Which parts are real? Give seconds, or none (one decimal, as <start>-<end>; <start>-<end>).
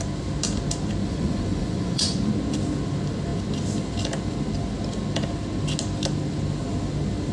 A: 0.0-1.0; 2.3-7.3